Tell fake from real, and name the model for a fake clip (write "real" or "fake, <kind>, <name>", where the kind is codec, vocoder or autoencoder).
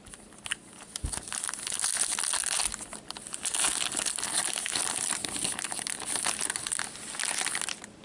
real